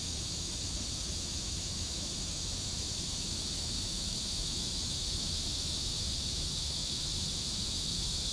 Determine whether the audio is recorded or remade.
remade